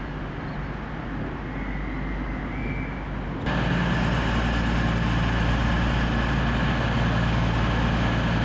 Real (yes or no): yes